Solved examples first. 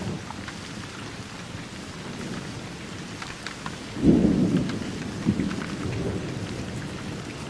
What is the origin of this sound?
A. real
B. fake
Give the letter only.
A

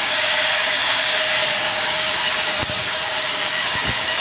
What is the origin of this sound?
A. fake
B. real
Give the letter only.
A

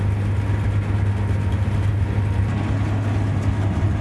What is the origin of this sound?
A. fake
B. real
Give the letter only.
B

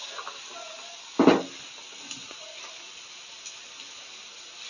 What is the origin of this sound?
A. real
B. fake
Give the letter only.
A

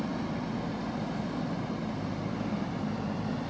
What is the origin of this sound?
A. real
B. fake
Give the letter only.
A